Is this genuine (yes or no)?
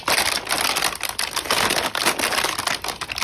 yes